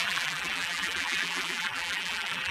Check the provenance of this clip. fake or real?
fake